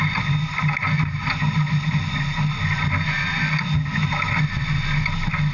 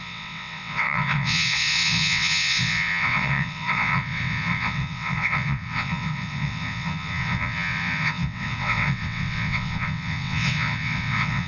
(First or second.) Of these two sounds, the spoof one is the second